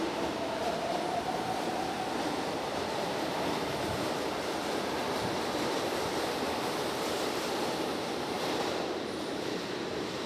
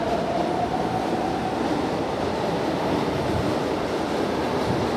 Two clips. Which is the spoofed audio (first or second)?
first